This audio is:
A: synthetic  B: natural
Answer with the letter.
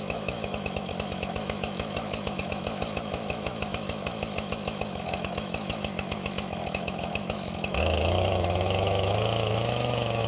A